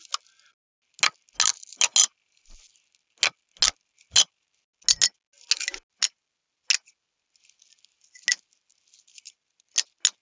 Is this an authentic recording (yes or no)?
yes